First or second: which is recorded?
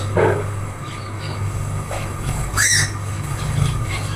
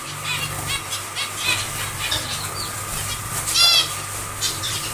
second